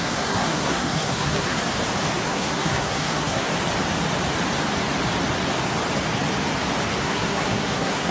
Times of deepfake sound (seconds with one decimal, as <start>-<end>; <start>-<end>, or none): 0.0-1.6; 2.2-3.5; 7.0-8.1